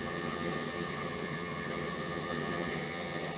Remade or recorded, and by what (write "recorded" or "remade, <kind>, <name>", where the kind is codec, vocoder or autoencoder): remade, vocoder, HiFi-GAN